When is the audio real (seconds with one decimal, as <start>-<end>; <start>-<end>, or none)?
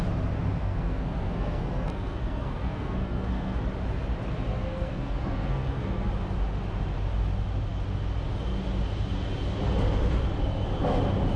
0.0-0.6; 3.6-4.5; 6.1-11.4